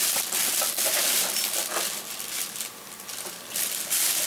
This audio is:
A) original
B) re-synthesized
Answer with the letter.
A